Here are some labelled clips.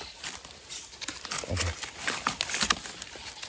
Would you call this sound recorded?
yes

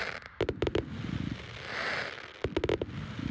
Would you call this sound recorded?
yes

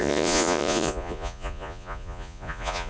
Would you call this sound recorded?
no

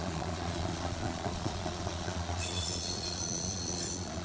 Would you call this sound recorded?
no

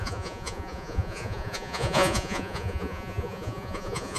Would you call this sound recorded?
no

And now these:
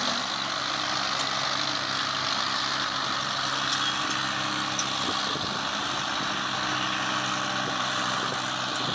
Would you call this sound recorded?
yes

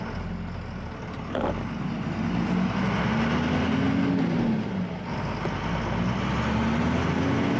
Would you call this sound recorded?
yes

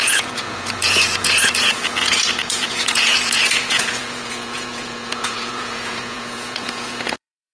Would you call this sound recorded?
no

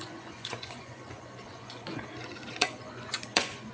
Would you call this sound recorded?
no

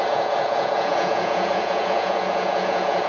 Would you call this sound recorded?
no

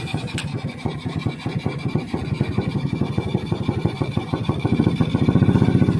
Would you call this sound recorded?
no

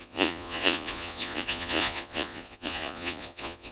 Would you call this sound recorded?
no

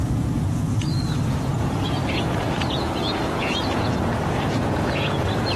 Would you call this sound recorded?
no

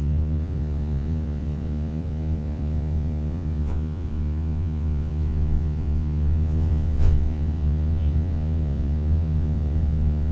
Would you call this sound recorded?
no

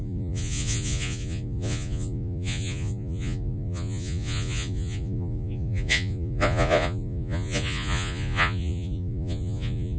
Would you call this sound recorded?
no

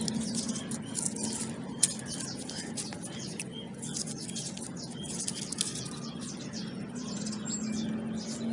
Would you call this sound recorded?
yes